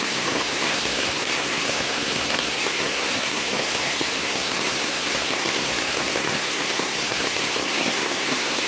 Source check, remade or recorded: remade